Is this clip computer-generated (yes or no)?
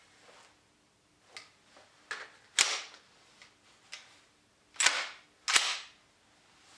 no